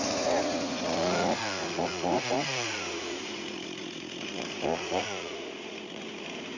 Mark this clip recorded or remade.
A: remade